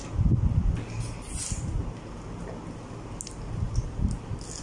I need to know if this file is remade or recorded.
recorded